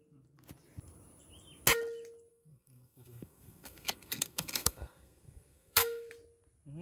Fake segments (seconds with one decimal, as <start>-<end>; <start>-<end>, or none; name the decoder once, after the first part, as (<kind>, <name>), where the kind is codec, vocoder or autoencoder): 2.3-6.1 (codec, SNAC)